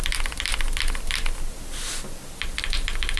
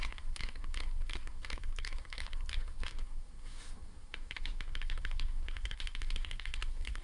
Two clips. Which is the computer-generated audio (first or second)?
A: second